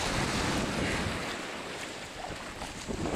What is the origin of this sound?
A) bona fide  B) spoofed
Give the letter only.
A